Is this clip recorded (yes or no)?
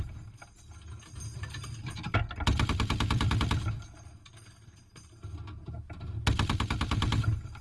yes